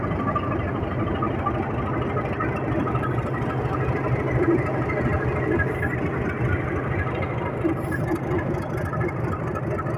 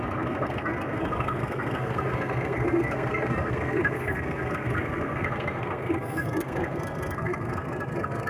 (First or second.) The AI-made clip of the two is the second